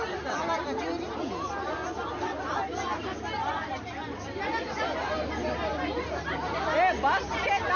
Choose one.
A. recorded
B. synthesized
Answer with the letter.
A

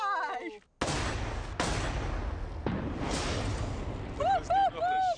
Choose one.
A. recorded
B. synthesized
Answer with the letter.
A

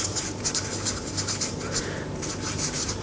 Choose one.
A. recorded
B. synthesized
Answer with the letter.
A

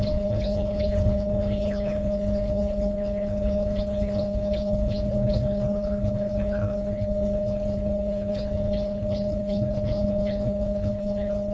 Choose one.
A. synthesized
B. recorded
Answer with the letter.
A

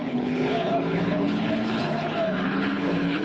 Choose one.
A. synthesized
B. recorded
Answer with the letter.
A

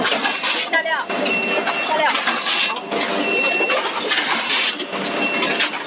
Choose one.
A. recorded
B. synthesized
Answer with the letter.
A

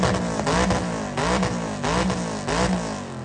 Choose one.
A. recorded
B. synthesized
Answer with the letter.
A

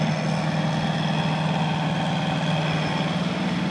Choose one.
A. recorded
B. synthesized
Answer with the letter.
A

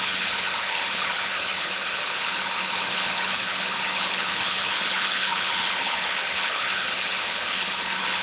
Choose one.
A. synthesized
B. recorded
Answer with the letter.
A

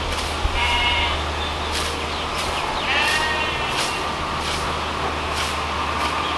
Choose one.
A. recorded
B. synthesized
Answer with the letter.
A